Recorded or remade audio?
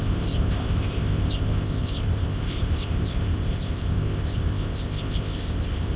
remade